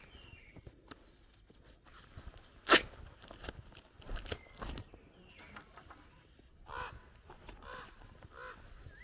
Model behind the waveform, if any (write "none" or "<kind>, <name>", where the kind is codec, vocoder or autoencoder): none